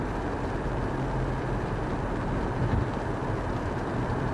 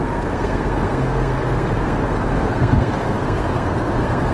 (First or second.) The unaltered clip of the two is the first